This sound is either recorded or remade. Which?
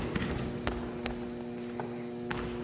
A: recorded